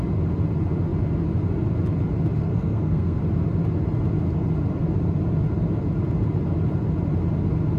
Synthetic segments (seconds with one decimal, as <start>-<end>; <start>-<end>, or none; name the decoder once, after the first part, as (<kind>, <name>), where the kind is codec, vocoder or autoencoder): 2.4-3.2 (codec, SNAC)